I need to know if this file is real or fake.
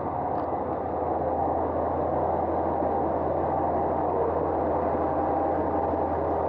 real